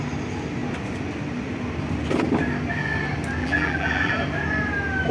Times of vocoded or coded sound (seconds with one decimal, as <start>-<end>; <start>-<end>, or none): 3.4-4.1